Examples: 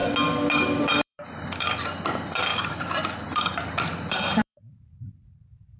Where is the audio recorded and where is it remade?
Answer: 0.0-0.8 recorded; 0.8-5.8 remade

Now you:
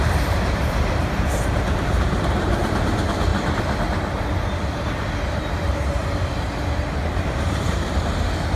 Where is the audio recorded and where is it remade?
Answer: 0.0-3.3 remade; 3.3-5.3 recorded; 5.3-6.0 remade; 6.0-7.5 recorded; 7.5-8.6 remade

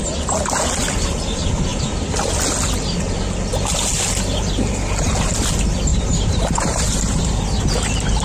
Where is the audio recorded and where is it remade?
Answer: 0.0-5.9 recorded; 5.9-7.7 remade; 7.7-8.2 recorded

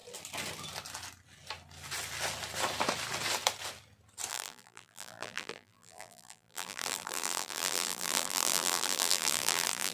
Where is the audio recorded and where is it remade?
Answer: 0.0-4.3 recorded; 4.3-9.9 remade

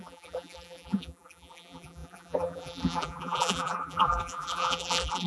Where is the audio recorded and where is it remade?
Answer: 0.0-5.3 remade

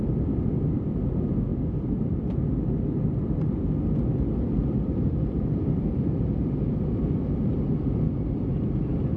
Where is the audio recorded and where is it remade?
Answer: 0.0-1.5 recorded; 1.5-2.6 remade; 2.6-4.5 recorded; 4.5-5.6 remade; 5.6-9.2 recorded

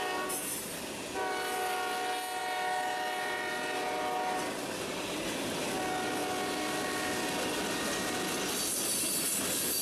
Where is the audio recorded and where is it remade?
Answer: 0.0-9.8 recorded

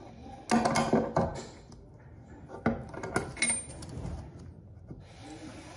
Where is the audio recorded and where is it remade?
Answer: 0.0-5.8 recorded